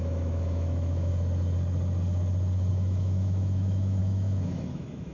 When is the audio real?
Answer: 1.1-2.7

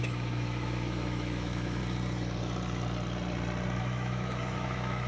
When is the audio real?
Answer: 1.8-3.8

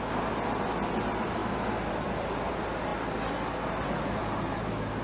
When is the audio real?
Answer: 0.0-5.0

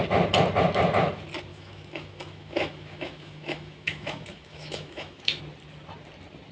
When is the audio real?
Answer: 0.0-1.5; 5.4-6.5

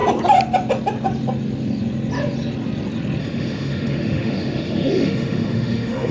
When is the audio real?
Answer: 0.0-3.2

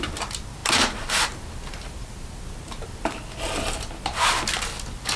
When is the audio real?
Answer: 0.0-5.2

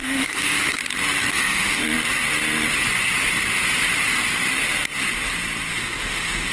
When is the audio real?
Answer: 0.8-1.3; 1.8-5.7